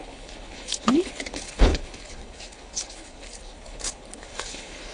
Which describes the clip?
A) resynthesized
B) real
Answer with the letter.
A